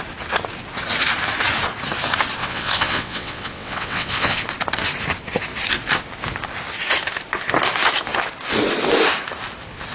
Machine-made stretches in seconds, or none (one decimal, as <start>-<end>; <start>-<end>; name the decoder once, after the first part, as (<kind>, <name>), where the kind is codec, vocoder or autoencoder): 2.4-4.4 (vocoder, WaveNeXt)